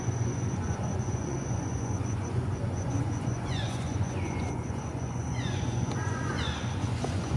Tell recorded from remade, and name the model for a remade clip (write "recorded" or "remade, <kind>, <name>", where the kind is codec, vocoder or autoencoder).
remade, vocoder, Vocos